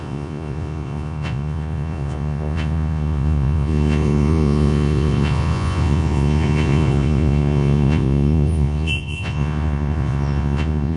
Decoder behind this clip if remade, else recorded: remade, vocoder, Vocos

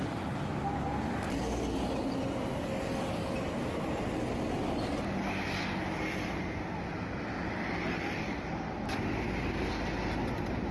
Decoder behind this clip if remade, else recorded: recorded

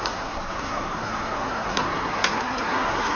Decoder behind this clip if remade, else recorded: remade, codec, SNAC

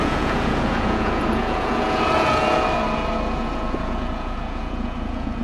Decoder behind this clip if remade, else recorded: remade, vocoder, Vocos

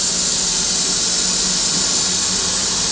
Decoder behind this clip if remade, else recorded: recorded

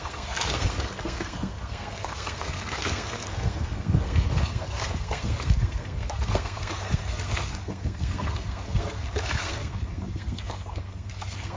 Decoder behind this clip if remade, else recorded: remade, codec, SNAC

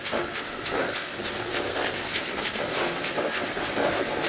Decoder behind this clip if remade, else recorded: remade, codec, SNAC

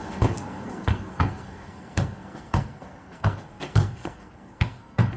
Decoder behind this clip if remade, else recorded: remade, codec, SNAC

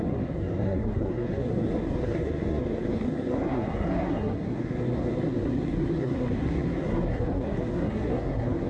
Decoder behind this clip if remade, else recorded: remade, codec, SNAC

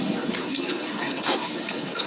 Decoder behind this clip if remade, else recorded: remade, codec, SNAC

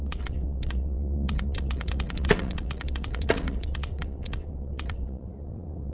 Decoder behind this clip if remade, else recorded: remade, vocoder, WaveNeXt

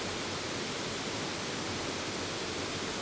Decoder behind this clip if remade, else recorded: recorded